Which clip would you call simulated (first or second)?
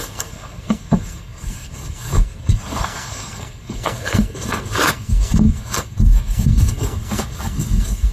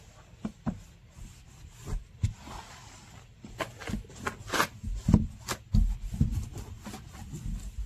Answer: first